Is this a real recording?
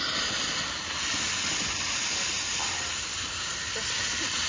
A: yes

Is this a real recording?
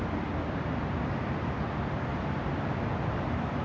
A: yes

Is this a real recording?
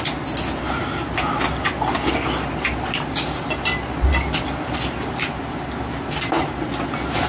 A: yes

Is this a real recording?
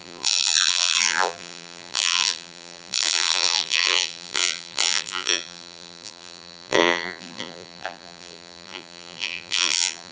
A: no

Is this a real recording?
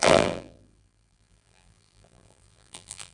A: no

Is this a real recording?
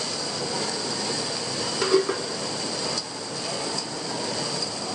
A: yes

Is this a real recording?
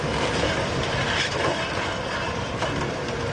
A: no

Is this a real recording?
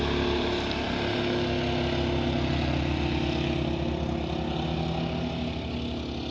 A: yes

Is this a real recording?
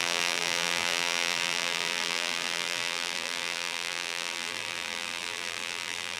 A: no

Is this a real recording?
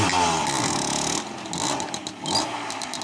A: yes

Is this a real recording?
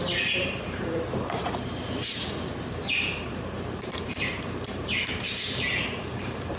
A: no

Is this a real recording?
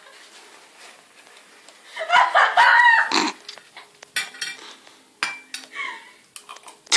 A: yes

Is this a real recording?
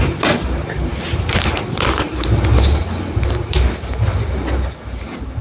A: no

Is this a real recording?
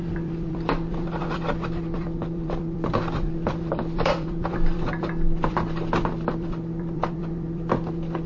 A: no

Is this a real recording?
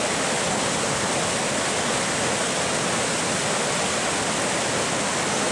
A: yes